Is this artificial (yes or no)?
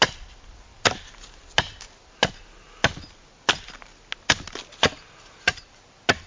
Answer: no